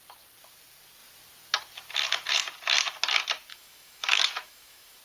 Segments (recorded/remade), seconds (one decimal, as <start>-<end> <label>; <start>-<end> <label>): 0.0-3.5 recorded; 3.5-5.0 remade